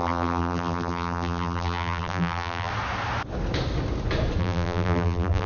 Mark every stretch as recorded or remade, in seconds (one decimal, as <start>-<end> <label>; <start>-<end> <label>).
0.0-2.7 remade; 2.7-4.4 recorded; 4.4-5.5 remade